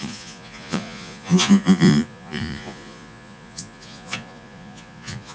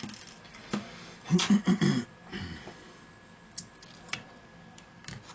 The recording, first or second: second